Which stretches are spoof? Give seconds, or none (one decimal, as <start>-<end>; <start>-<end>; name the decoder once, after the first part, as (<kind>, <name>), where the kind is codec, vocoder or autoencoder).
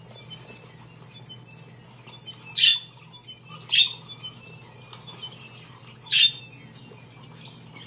none